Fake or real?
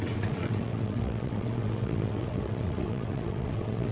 fake